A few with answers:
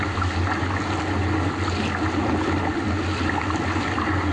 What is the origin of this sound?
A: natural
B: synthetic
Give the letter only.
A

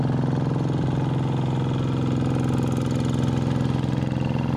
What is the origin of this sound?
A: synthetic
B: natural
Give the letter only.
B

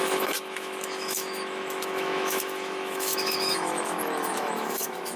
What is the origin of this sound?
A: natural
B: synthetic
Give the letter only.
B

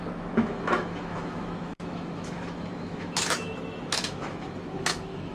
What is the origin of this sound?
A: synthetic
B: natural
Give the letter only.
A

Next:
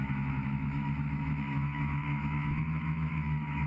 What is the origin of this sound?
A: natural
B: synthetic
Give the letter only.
B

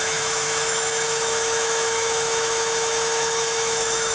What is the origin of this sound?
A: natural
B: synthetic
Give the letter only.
B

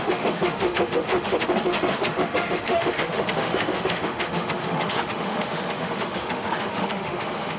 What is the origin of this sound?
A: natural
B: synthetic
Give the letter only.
B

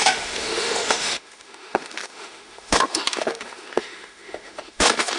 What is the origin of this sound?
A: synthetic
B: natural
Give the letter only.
A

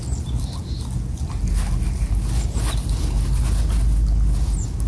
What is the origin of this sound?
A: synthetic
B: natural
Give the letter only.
B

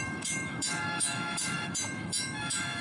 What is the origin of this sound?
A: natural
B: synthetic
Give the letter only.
B